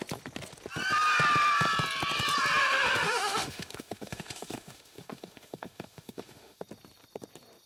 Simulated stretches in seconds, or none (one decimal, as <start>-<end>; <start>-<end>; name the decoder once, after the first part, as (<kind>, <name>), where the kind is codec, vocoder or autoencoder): 2.6-6.6 (autoencoder, DAC-VAE)